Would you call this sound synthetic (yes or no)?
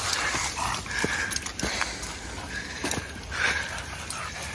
no